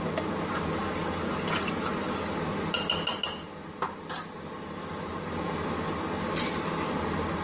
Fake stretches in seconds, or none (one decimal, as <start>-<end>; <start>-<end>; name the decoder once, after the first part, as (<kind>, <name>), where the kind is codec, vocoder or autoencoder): none